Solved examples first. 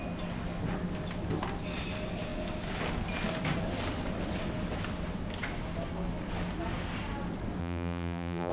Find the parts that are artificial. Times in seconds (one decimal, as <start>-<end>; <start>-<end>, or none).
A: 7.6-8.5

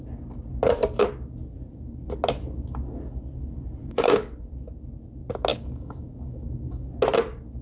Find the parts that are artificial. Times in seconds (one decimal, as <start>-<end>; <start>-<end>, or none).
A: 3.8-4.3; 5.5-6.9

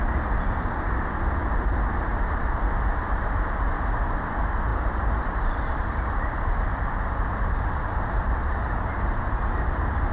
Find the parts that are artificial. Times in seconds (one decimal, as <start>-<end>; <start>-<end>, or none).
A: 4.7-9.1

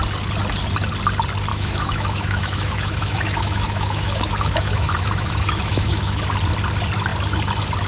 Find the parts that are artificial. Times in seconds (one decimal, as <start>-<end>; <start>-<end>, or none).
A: 1.5-6.2

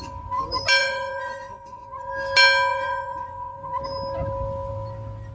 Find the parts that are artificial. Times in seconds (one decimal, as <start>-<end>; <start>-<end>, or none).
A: 0.8-2.1; 2.7-3.8

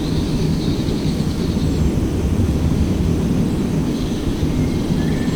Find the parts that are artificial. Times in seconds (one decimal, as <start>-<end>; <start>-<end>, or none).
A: 0.0-1.4; 2.4-3.1; 3.8-4.6